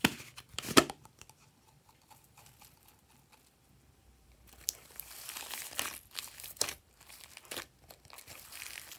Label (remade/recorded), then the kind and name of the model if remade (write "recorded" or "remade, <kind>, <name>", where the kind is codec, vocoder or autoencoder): remade, vocoder, BigVGAN v2